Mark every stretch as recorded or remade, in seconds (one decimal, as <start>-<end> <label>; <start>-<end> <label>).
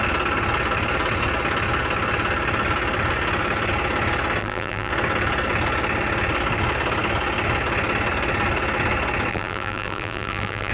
0.0-4.4 recorded; 4.4-4.9 remade; 4.9-9.3 recorded; 9.3-10.7 remade